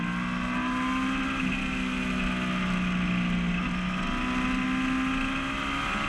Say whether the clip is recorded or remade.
recorded